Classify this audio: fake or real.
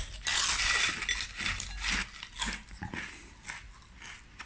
real